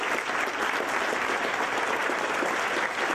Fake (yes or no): no